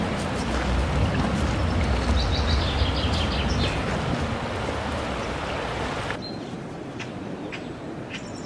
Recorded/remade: recorded